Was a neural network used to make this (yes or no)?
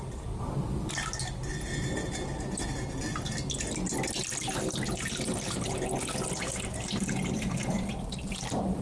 no